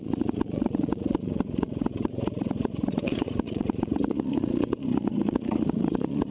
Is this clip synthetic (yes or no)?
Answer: yes